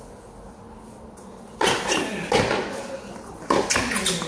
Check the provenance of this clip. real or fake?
real